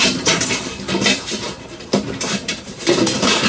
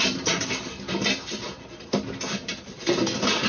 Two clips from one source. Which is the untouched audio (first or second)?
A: second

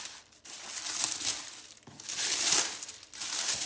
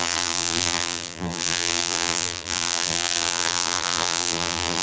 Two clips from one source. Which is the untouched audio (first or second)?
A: first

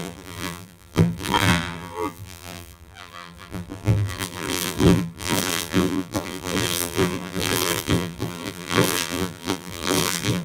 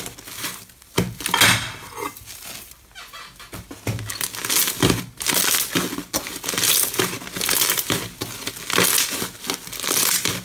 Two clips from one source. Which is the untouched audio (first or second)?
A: second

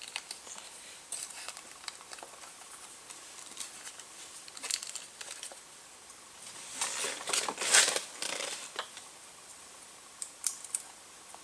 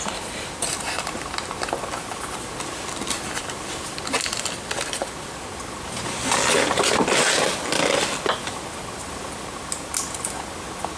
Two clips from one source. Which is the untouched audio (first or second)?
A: second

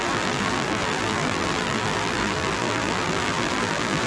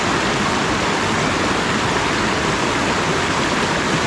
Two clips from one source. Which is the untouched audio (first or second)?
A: second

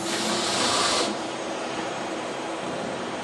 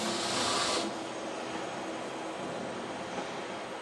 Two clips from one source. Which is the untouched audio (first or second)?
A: second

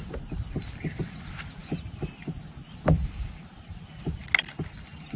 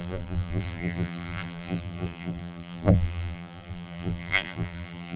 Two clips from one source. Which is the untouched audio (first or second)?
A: first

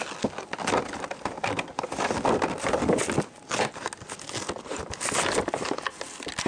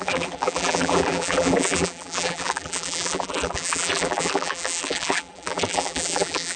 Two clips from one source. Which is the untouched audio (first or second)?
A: first